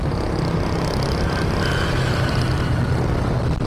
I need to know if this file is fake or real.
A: real